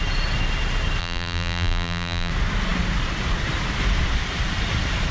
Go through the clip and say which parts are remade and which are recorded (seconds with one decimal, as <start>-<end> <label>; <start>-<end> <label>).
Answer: 0.0-1.0 recorded; 1.0-2.3 remade; 2.3-5.1 recorded